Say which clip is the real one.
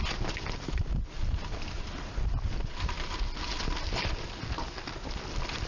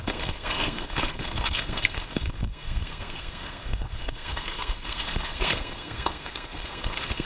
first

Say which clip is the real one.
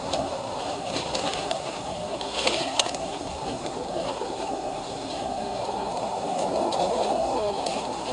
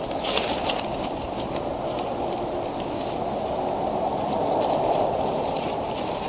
second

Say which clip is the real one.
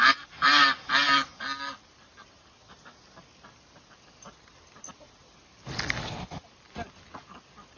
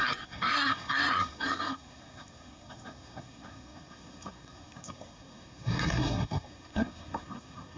first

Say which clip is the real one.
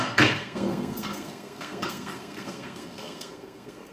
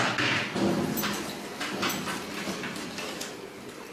second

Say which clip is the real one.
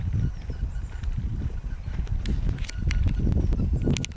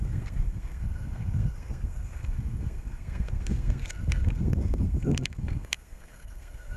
first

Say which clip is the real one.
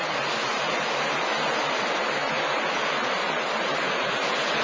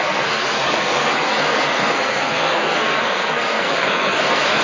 first